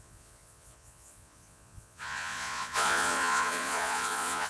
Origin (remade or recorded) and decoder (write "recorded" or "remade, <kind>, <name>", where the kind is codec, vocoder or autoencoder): remade, vocoder, Vocos